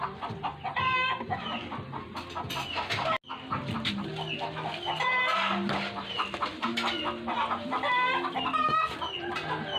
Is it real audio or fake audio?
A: real